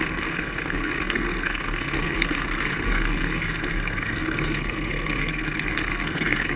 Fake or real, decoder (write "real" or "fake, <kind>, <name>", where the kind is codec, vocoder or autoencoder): fake, codec, SNAC